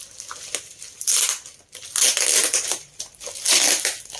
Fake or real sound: real